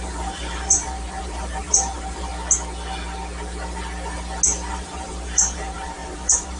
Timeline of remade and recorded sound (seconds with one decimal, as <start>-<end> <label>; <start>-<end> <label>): 0.0-2.3 remade; 2.3-4.7 recorded; 4.7-6.6 remade